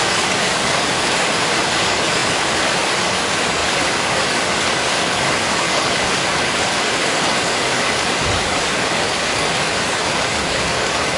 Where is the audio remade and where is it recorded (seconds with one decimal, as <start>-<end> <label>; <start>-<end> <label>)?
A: 0.0-11.2 remade